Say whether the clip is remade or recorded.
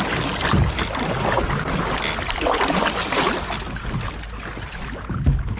recorded